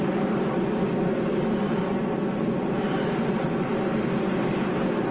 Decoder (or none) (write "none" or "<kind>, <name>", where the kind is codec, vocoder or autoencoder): none